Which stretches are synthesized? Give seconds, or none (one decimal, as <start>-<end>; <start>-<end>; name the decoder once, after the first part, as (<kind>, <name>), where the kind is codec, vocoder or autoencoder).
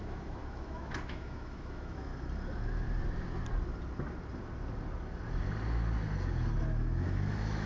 0.0-2.1 (autoencoder, DAC-VAE); 6.7-7.7